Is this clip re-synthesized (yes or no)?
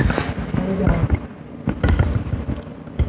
no